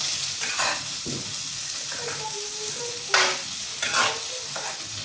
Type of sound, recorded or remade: recorded